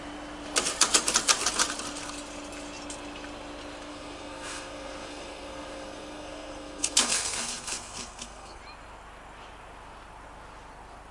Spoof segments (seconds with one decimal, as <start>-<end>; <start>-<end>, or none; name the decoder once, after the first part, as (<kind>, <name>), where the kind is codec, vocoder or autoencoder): 3.9-8.6 (codec, SNAC)